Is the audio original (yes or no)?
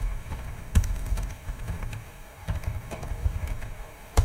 no